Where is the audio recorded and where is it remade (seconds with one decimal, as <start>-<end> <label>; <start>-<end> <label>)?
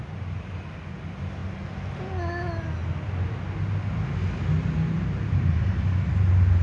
0.0-6.6 recorded